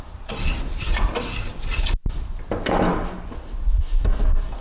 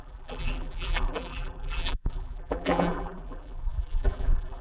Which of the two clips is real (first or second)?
first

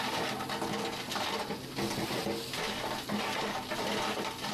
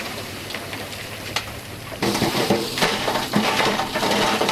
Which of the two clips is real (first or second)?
first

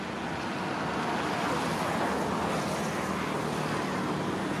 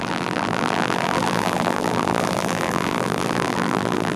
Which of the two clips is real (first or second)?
first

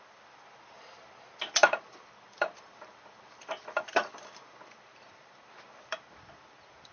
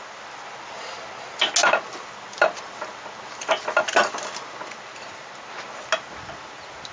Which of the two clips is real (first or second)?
second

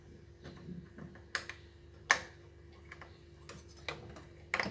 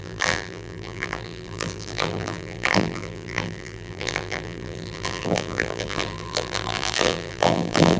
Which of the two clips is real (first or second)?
first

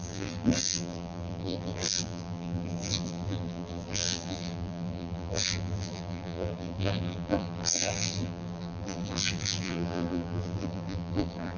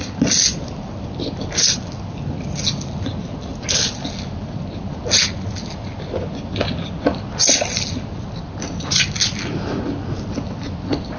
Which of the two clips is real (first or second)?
second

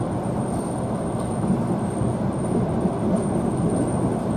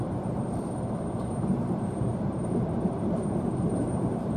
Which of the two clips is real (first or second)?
first